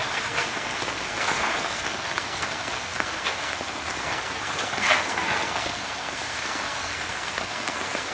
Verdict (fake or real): fake